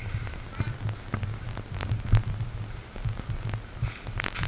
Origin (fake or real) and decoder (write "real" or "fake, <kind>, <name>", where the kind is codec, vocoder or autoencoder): real